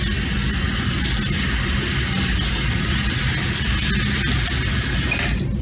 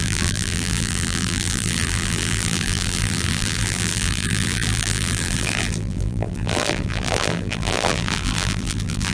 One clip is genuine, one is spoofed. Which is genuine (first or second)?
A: first